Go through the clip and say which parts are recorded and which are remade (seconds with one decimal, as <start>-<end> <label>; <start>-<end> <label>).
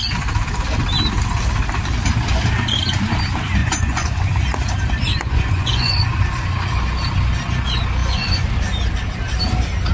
0.0-3.6 recorded; 3.6-4.2 remade; 4.2-5.1 recorded; 5.1-6.2 remade; 6.2-8.0 recorded; 8.0-8.5 remade; 8.5-9.9 recorded